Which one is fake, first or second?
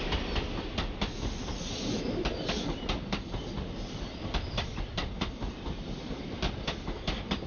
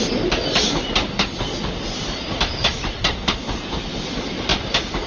first